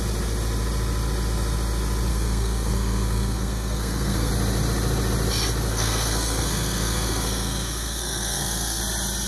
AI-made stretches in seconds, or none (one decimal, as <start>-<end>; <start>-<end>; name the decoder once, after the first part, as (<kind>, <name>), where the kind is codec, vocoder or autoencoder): 2.1-4.3 (codec, SNAC); 5.7-8.8